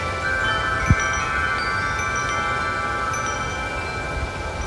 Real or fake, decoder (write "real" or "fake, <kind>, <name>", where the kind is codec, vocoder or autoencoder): real